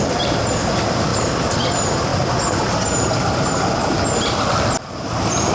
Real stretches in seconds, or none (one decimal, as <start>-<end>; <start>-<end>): 0.0-5.5